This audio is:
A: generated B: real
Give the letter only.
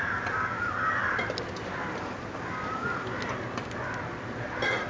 B